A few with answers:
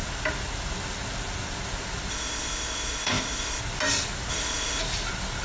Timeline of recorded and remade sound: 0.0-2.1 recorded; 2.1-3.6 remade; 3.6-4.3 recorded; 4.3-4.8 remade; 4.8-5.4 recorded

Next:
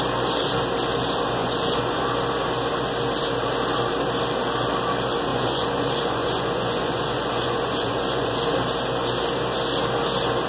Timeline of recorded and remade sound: 0.0-1.4 recorded; 1.4-2.0 remade; 2.0-5.3 recorded; 5.3-8.4 remade; 8.4-10.5 recorded

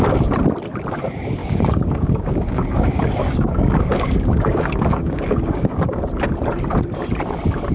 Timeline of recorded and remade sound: 0.0-1.4 recorded; 1.4-6.0 remade; 6.0-7.7 recorded

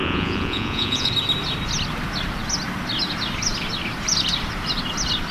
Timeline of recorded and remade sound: 0.0-1.1 remade; 1.1-5.3 recorded

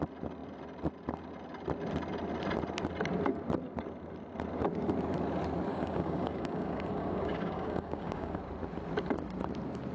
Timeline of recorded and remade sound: 0.0-5.7 recorded; 5.7-8.4 remade; 8.4-9.9 recorded